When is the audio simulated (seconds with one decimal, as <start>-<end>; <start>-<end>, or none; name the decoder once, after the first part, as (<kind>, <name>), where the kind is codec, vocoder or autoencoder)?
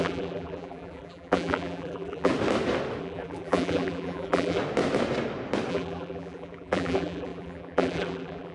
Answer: 0.0-2.3 (vocoder, BigVGAN v2); 3.0-4.6; 5.7-8.5